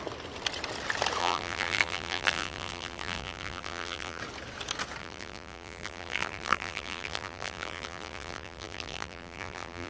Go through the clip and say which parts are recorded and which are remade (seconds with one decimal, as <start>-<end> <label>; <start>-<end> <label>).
0.0-1.2 recorded; 1.2-4.2 remade; 4.2-5.0 recorded; 5.0-9.9 remade